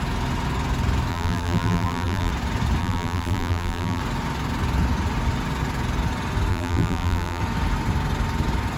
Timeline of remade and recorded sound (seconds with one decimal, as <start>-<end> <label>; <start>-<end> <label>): 0.0-1.1 recorded; 1.1-2.3 remade; 2.3-2.8 recorded; 2.8-4.0 remade; 4.0-6.5 recorded; 6.5-7.4 remade; 7.4-8.8 recorded